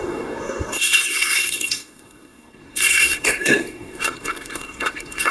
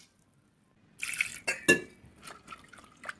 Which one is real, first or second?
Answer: second